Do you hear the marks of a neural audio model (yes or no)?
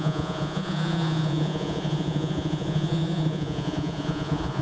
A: yes